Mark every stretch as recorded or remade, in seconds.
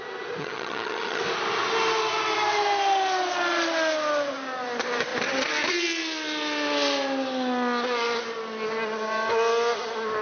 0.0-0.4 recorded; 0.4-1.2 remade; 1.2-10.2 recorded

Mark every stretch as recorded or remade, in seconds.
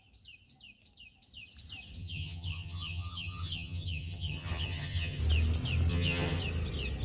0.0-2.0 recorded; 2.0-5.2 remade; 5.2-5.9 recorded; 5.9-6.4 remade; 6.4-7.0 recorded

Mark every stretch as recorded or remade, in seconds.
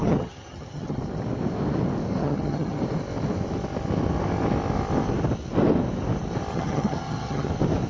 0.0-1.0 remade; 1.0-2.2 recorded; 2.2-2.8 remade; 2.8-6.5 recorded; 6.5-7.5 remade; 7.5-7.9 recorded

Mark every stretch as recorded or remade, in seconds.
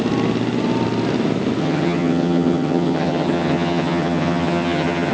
0.0-1.6 recorded; 1.6-5.1 remade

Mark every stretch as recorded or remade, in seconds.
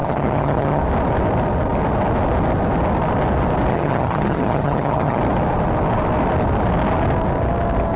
0.0-0.8 remade; 0.8-3.7 recorded; 3.7-5.2 remade; 5.2-8.0 recorded